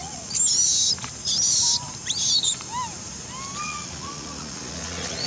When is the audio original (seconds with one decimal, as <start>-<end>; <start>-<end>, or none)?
0.4-3.6